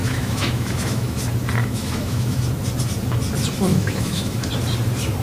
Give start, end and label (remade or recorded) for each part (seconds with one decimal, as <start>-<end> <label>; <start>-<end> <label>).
0.0-1.2 remade; 1.2-1.6 recorded; 1.6-2.4 remade; 2.4-3.7 recorded; 3.7-4.5 remade; 4.5-5.2 recorded